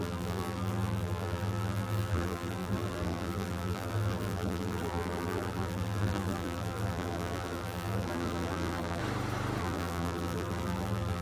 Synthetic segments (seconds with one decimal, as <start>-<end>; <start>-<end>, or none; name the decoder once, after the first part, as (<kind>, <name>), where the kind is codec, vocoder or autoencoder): 0.0-9.0 (vocoder, BigVGAN v2); 9.6-11.2